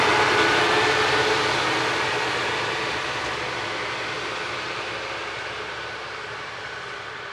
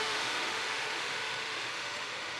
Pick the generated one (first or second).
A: second